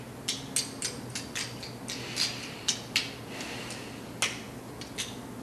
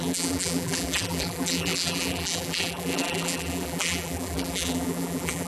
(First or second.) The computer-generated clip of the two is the second